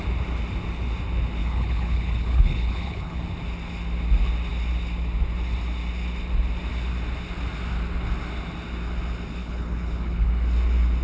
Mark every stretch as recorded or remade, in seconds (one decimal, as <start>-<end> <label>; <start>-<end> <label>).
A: 0.0-1.4 recorded; 1.4-3.2 remade; 3.2-9.4 recorded; 9.4-10.3 remade; 10.3-11.0 recorded